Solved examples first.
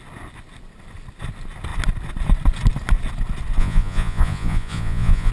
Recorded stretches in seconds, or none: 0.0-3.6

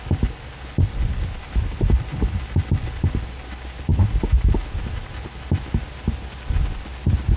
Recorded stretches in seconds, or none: 0.0-7.4

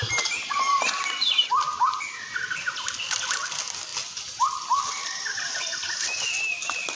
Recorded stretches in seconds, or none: 0.0-7.0

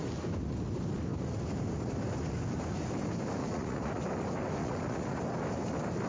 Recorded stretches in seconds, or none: 0.0-3.4; 4.0-4.6; 5.2-6.1

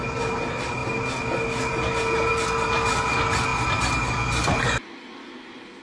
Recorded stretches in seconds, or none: 0.0-5.8

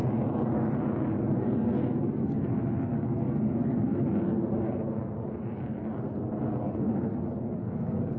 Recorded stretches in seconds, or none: 0.0-8.2

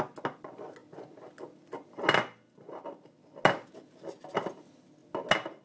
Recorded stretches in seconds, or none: 0.0-5.6

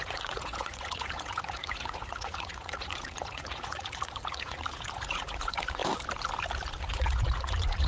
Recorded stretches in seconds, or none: 5.8-6.8